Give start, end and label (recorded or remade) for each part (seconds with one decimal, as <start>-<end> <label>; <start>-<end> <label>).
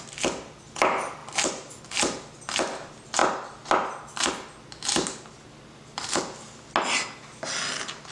0.0-8.1 recorded